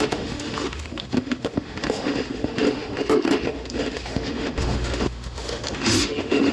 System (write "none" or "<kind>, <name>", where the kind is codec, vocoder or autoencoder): autoencoder, DAC-VAE